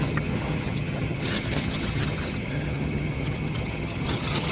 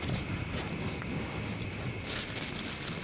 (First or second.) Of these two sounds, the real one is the second